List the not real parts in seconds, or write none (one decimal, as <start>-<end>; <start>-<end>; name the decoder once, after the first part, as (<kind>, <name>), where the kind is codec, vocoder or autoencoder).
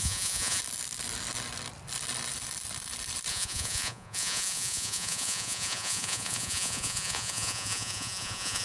0.0-0.6 (vocoder, Vocos); 3.3-8.6